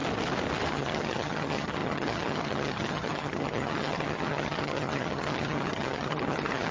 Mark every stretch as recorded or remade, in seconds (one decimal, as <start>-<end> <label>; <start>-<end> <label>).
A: 0.0-0.7 recorded; 0.7-6.7 remade

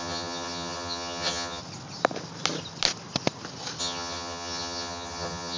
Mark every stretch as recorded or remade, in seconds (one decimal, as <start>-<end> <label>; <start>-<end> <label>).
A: 0.0-1.6 remade; 1.6-3.8 recorded; 3.8-5.6 remade